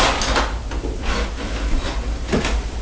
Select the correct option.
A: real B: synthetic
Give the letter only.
A